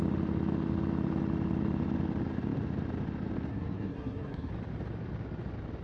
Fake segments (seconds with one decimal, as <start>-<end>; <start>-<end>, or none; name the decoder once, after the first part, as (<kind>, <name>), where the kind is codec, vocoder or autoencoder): 3.5-4.5 (codec, SNAC)